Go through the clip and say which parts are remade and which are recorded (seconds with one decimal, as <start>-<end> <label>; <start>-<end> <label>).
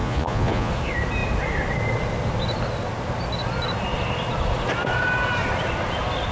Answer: 0.0-0.7 remade; 0.7-6.3 recorded